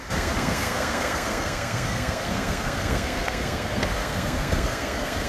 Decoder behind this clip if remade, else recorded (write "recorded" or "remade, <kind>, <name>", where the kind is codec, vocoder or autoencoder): remade, codec, SNAC